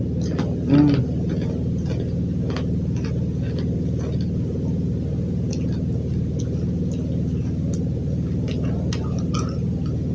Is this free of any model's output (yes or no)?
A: yes